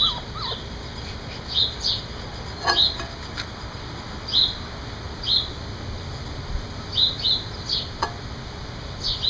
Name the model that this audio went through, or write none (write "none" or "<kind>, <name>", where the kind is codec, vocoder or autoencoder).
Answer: none